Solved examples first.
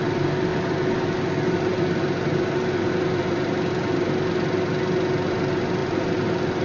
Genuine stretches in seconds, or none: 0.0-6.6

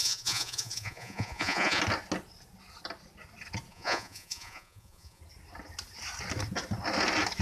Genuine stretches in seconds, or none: 1.8-3.7; 5.2-7.4

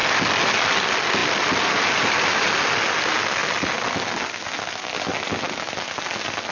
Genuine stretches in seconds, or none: 0.0-6.5

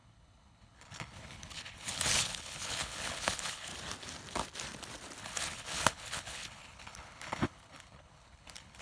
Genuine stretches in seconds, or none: 3.7-5.2

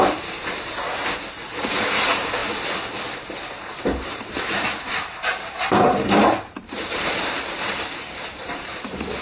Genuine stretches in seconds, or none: 2.4-3.8